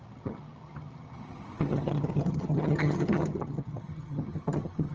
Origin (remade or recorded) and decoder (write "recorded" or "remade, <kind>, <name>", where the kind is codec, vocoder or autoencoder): remade, vocoder, HiFi-GAN